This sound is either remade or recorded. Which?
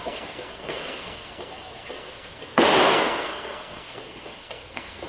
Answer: remade